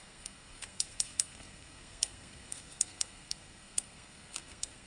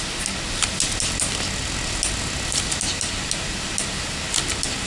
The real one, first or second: second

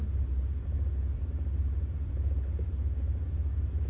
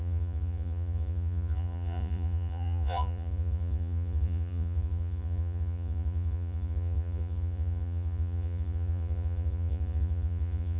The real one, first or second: first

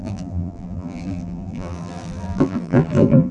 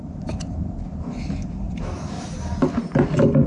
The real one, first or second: second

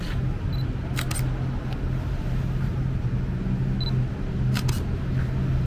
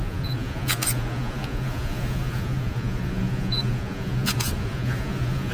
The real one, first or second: first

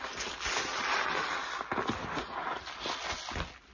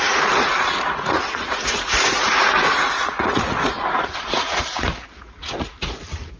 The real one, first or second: first